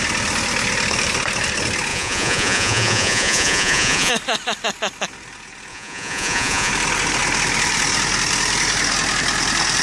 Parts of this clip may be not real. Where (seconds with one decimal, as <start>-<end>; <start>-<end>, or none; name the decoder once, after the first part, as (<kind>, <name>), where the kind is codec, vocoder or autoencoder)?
1.9-4.1 (vocoder, Vocos); 5.7-6.7